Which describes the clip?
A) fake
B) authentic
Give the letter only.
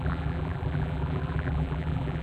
A